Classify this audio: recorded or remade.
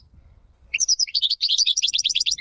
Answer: remade